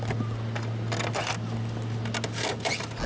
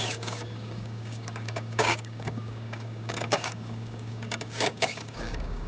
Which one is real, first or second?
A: first